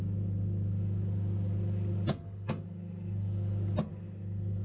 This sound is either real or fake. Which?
real